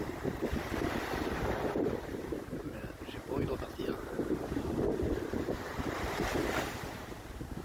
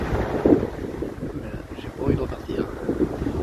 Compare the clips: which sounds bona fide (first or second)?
second